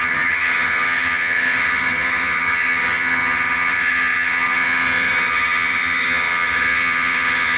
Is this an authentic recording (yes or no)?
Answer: no